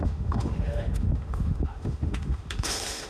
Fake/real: fake